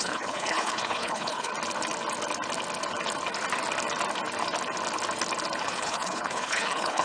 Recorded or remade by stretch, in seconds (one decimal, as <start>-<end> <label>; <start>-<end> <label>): 0.0-1.5 remade; 1.5-5.6 recorded; 5.6-7.0 remade